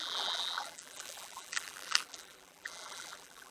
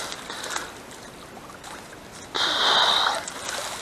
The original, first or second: second